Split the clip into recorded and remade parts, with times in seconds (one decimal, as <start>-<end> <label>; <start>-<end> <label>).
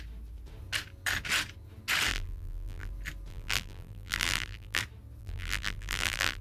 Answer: 0.0-2.1 recorded; 2.1-2.9 remade; 2.9-3.3 recorded; 3.3-4.8 remade; 4.8-5.2 recorded; 5.2-6.4 remade